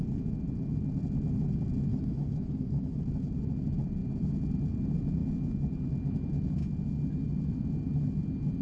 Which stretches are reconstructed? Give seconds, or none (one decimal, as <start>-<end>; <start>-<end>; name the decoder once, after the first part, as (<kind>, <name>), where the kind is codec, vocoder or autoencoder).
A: 1.9-3.0 (autoencoder, DAC-VAE)